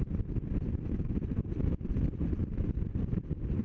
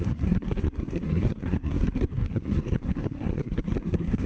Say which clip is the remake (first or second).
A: second